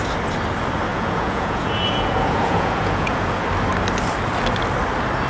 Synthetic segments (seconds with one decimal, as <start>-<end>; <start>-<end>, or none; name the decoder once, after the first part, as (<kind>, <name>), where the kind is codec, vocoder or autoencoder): 0.9-3.4 (vocoder, Vocos)